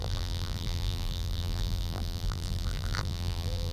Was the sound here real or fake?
fake